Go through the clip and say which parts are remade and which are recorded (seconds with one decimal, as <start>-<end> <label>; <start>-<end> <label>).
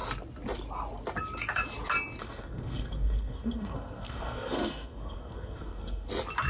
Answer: 0.0-2.2 recorded; 2.2-6.1 remade; 6.1-6.5 recorded